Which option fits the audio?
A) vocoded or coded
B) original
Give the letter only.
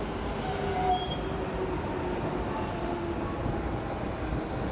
B